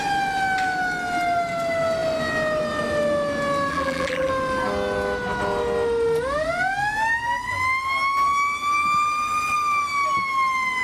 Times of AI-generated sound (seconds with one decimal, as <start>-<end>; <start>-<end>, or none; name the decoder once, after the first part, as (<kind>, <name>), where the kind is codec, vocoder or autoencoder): 3.7-4.3 (vocoder, BigVGAN v2)